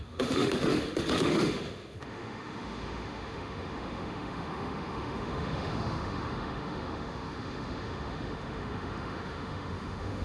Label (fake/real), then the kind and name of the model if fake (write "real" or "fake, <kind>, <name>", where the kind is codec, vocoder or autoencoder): fake, autoencoder, DAC-VAE